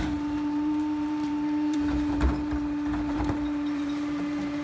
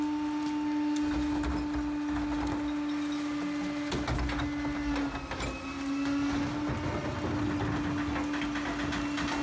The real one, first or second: second